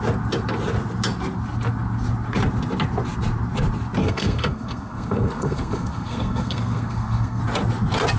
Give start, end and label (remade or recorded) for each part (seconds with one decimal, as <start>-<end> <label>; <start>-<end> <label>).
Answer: 0.0-4.0 recorded; 4.0-7.4 remade; 7.4-8.2 recorded